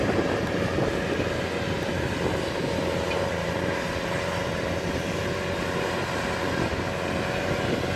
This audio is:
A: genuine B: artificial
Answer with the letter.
A